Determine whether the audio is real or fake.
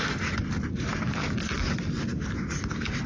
real